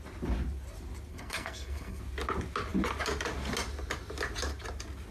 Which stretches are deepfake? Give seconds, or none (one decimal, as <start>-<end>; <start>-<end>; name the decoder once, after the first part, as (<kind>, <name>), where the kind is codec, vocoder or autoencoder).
1.1-2.0 (codec, SNAC)